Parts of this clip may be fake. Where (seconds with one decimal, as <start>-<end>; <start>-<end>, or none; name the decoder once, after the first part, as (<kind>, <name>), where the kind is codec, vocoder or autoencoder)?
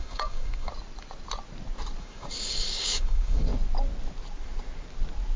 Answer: 0.0-0.7 (codec, DAC); 2.0-3.5